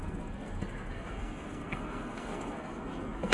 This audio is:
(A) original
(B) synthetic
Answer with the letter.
B